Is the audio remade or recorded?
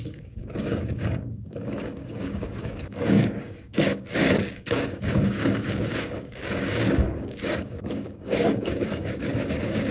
remade